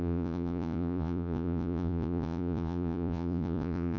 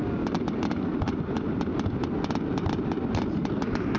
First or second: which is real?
second